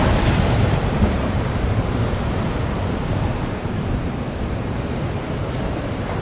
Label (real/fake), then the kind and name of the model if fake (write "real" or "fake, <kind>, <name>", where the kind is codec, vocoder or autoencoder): fake, vocoder, BigVGAN v2